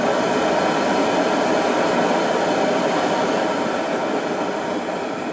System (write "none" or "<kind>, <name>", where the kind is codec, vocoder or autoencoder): none